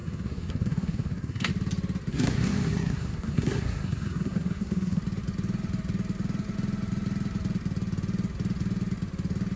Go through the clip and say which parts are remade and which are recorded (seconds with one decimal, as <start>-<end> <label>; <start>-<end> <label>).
0.0-1.5 remade; 1.5-2.1 recorded; 2.1-5.0 remade; 5.0-9.6 recorded